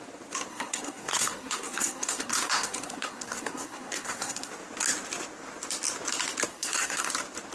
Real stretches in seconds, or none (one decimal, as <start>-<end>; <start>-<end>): 0.0-0.5; 4.5-6.5; 7.1-7.5